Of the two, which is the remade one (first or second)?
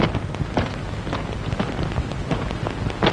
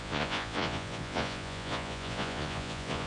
second